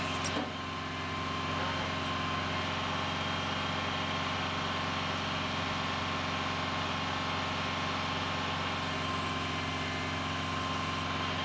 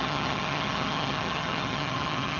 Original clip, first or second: first